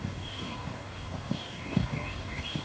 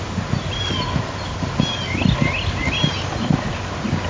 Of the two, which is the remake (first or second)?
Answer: first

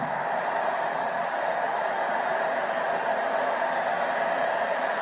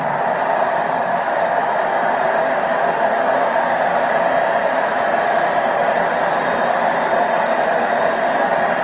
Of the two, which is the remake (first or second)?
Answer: first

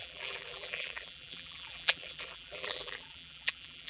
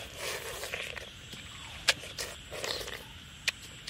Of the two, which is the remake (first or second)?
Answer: first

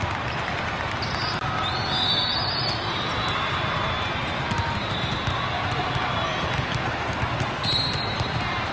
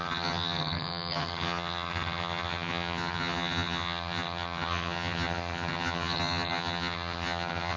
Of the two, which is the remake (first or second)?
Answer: second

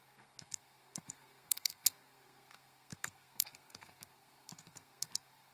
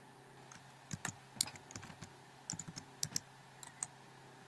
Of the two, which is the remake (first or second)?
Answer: first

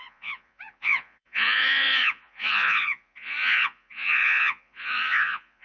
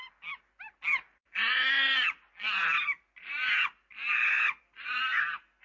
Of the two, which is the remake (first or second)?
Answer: first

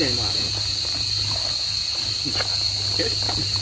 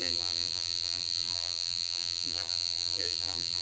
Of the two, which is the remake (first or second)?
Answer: second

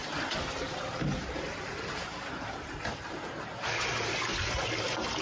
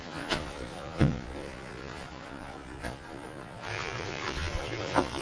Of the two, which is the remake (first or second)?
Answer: second